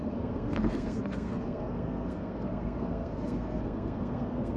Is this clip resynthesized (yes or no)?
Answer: yes